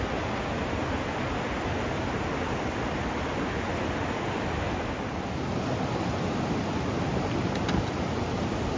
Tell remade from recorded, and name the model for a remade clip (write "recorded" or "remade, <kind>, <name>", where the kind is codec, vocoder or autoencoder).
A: recorded